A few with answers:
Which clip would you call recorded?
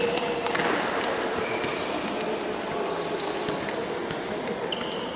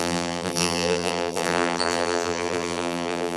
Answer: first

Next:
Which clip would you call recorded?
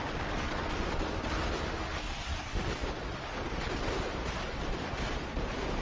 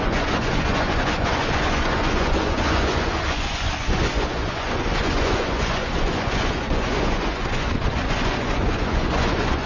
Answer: first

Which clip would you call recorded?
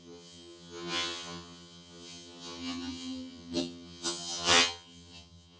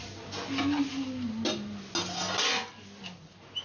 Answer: second